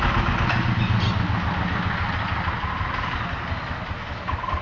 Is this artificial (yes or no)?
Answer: no